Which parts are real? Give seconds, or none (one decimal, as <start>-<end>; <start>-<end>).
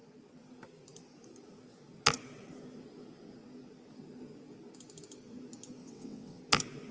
0.0-5.8; 6.4-6.9